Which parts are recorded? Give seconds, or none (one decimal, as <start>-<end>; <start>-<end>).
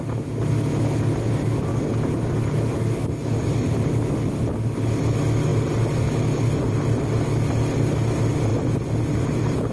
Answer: 0.0-5.5; 7.8-8.5